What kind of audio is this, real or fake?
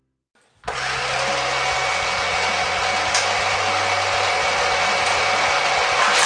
real